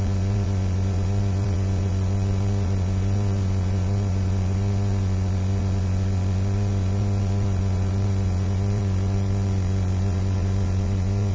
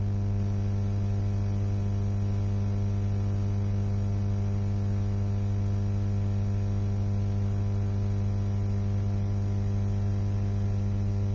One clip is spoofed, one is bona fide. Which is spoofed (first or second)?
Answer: first